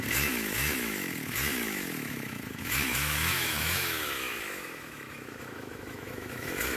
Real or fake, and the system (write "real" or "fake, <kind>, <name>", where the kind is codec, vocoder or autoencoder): fake, autoencoder, DAC-VAE